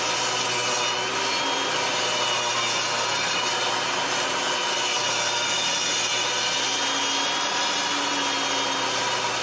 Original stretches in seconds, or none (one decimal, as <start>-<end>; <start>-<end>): 0.0-9.4